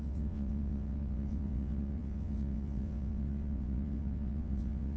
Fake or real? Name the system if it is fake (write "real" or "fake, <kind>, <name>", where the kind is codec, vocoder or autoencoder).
fake, vocoder, WaveNeXt